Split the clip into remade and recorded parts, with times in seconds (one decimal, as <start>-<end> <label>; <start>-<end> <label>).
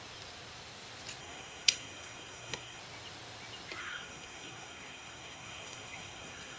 0.0-1.2 recorded; 1.2-2.8 remade; 2.8-3.8 recorded; 3.8-6.6 remade